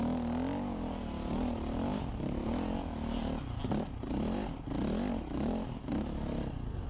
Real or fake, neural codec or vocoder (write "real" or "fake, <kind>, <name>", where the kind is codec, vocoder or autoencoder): real